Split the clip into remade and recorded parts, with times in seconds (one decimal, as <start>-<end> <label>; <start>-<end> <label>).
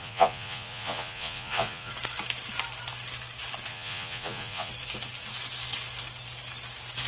0.0-1.9 remade; 1.9-3.7 recorded; 3.7-4.7 remade; 4.7-7.1 recorded